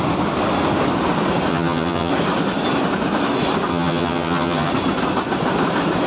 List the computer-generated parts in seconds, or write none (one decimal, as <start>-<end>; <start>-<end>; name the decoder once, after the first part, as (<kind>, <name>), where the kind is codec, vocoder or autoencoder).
1.5-2.1 (vocoder, HiFi-GAN); 3.7-4.7